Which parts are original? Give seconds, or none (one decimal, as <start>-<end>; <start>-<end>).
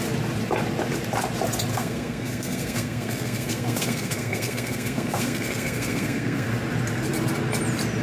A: 0.0-1.7; 6.5-8.0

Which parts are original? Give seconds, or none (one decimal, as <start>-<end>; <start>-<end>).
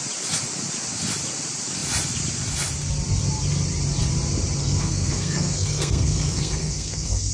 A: 0.0-4.6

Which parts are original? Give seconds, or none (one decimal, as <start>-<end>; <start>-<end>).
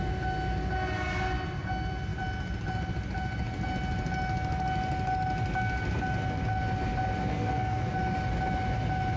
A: 0.0-7.3; 7.9-9.2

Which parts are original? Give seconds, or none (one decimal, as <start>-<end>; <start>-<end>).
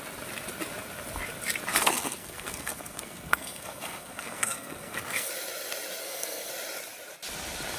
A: 0.0-1.7; 5.3-6.0; 6.5-7.8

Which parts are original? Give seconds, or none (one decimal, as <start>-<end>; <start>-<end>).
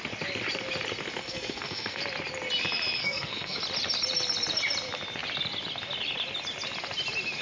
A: 0.0-1.2; 2.0-3.0; 3.6-7.4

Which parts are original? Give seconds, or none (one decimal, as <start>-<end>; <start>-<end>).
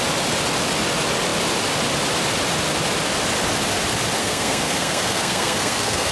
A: 0.0-4.2